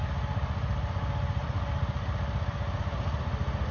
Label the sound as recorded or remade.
recorded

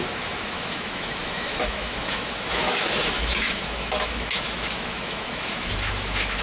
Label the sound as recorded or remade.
remade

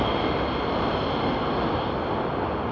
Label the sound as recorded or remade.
recorded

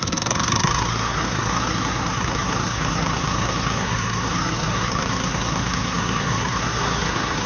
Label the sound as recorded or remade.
remade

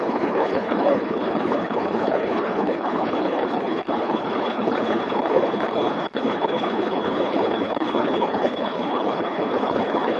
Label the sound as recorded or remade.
remade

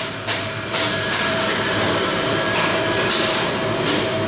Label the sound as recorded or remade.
remade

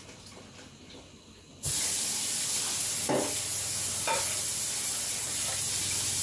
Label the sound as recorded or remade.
recorded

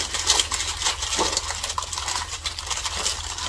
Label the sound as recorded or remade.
recorded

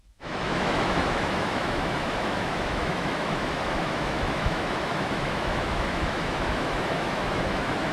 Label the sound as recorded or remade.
remade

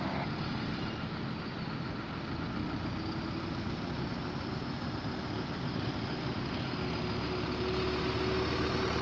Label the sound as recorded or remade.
recorded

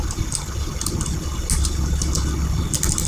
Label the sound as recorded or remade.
recorded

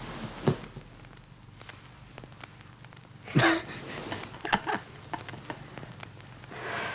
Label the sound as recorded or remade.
recorded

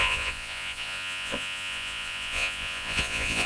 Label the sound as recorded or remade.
remade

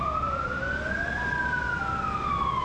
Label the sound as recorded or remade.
recorded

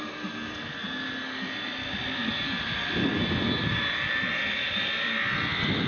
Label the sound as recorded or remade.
recorded